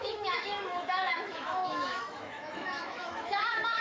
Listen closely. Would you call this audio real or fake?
fake